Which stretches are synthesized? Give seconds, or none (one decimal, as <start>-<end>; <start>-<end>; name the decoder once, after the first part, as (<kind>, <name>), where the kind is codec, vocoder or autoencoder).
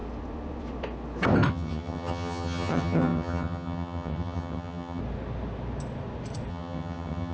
1.5-5.0 (vocoder, HiFi-GAN); 6.5-7.3